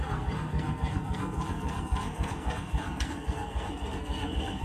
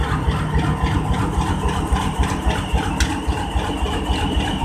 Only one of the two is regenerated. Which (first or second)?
first